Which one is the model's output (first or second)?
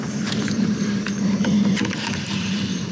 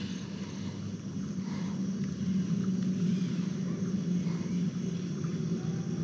first